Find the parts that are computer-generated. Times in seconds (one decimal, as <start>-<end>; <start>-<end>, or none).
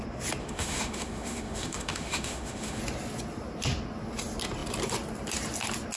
0.4-2.8